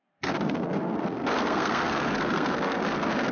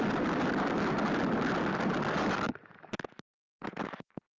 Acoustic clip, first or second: second